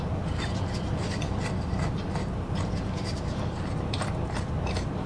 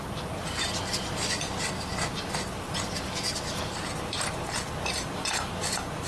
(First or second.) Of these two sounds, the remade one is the first